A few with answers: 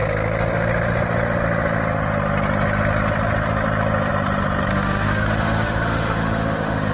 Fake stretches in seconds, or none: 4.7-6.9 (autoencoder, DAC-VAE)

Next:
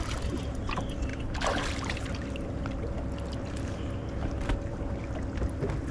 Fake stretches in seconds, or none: none